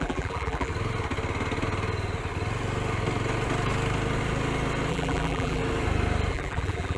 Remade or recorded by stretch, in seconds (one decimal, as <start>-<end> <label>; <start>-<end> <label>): 0.0-0.7 remade; 0.7-4.9 recorded; 4.9-5.6 remade; 5.6-6.3 recorded; 6.3-7.0 remade